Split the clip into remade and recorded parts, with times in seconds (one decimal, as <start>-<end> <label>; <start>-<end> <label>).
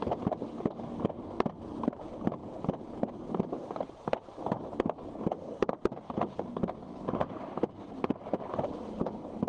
0.0-2.4 recorded; 2.4-3.0 remade; 3.0-9.5 recorded